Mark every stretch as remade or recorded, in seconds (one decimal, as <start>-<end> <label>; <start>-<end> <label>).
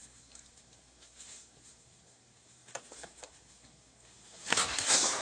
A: 0.0-5.2 remade